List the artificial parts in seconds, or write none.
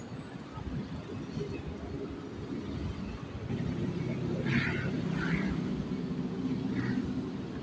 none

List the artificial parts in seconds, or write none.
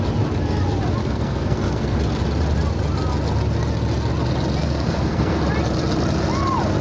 1.0-2.0 (codec, SNAC); 4.6-5.4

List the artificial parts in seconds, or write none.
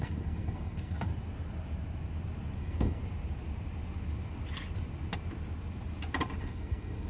0.0-1.1 (codec, SNAC); 2.6-3.0; 6.4-7.1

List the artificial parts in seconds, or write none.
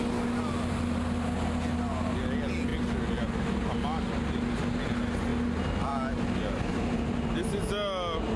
none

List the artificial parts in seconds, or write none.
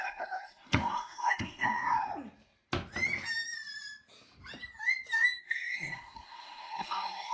0.0-2.1 (codec, SNAC); 5.4-7.3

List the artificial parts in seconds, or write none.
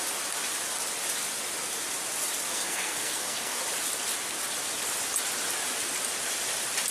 2.5-3.6 (codec, SNAC)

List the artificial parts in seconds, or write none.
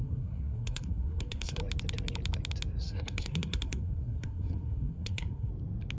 0.0-1.6 (codec, SNAC); 2.8-5.5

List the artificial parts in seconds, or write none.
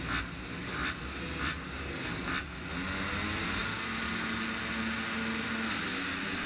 none